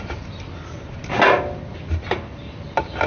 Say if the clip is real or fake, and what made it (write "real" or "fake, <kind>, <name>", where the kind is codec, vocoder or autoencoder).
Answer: fake, vocoder, BigVGAN v2